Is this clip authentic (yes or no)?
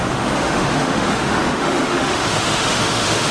no